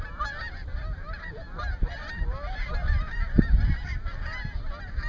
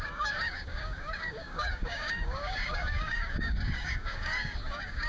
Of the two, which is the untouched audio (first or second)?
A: first